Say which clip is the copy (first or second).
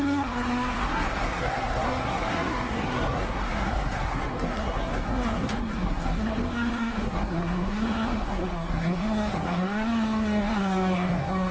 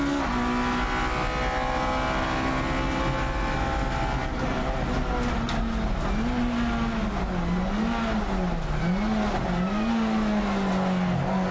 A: first